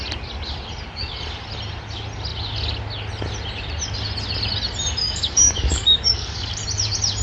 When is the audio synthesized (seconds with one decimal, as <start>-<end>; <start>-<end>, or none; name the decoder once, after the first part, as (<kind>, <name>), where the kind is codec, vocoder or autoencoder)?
5.0-6.5 (codec, DAC)